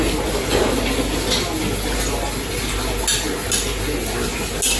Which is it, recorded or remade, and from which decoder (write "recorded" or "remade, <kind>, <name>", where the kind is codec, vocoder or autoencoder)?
recorded